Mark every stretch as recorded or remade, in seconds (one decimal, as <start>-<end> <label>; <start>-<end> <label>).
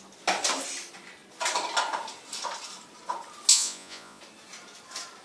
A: 0.0-3.5 recorded; 3.5-4.2 remade; 4.2-5.2 recorded